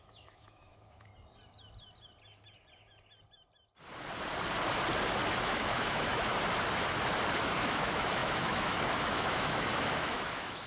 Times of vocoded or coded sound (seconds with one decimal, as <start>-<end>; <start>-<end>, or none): 0.0-1.1; 5.4-6.3; 7.4-10.7